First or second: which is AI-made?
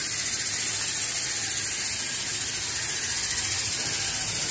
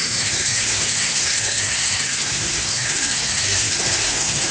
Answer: second